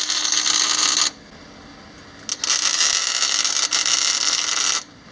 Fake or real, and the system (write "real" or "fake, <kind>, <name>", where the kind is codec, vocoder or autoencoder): real